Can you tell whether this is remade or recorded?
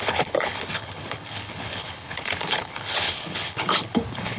remade